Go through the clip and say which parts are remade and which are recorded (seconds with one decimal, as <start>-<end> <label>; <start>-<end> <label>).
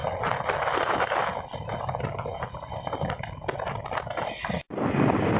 0.0-5.4 recorded